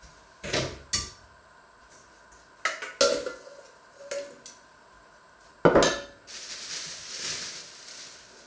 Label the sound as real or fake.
real